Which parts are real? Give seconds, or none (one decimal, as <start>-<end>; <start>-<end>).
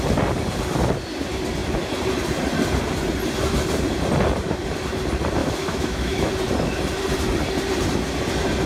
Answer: 0.0-5.4; 6.3-8.7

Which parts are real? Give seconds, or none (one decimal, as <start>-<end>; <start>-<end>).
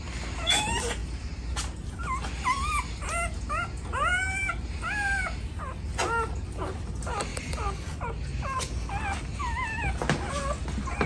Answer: 0.0-11.1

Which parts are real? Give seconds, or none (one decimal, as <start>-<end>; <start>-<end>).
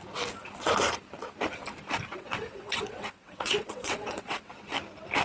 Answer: 0.0-2.1; 4.5-5.2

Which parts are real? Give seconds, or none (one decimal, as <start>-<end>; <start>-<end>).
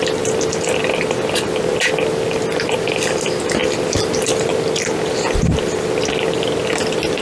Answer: 0.0-7.2